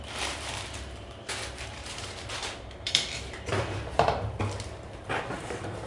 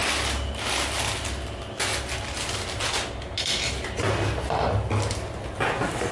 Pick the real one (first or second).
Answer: second